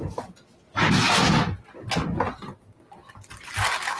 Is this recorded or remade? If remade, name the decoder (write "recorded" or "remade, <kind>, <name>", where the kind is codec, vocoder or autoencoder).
recorded